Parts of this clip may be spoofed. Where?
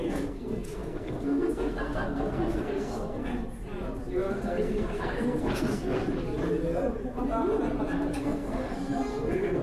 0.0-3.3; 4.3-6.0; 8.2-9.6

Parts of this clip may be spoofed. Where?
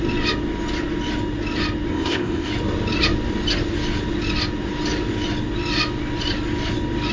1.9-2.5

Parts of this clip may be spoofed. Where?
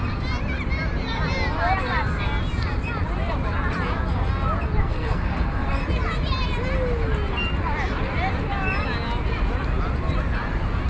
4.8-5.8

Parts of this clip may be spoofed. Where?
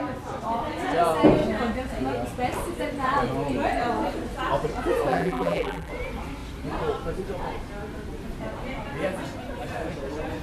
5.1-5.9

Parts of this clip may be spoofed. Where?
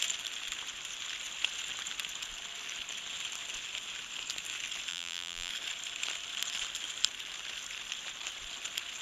4.9-5.5